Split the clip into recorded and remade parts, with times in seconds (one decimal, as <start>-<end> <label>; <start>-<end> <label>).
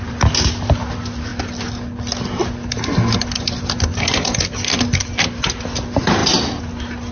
0.0-7.1 recorded